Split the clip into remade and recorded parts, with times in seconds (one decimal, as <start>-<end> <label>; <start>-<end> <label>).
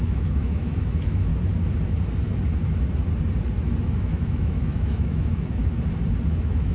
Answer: 0.0-1.3 remade; 1.3-4.0 recorded; 4.0-5.6 remade; 5.6-6.3 recorded; 6.3-6.7 remade